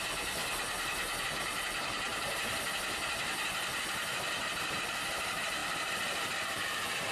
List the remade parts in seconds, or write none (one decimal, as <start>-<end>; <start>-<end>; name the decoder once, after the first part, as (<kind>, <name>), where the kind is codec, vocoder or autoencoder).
0.0-0.4 (vocoder, BigVGAN v2); 1.2-2.1; 3.8-7.1